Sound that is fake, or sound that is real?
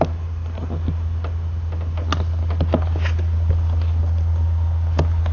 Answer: real